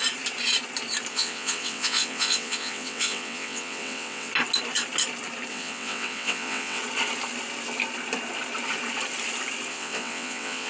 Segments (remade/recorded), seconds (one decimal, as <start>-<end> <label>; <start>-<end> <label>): 0.0-1.1 recorded; 1.1-4.3 remade; 4.3-5.5 recorded; 5.5-6.8 remade; 6.8-9.7 recorded; 9.7-10.7 remade

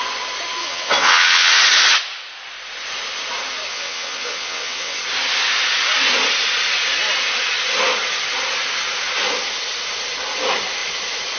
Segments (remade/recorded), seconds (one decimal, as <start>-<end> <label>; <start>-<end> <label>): 0.0-0.6 recorded; 0.6-1.5 remade; 1.5-3.7 recorded; 3.7-5.0 remade; 5.0-11.4 recorded

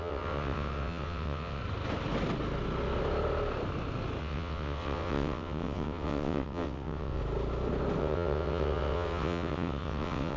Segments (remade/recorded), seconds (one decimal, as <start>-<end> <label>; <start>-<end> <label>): 0.0-1.6 remade; 1.6-4.2 recorded; 4.2-7.2 remade; 7.2-8.0 recorded; 8.0-10.4 remade

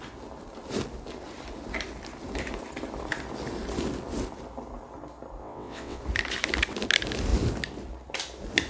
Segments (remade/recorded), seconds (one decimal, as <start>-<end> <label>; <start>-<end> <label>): 0.0-5.4 recorded; 5.4-6.0 remade; 6.0-8.7 recorded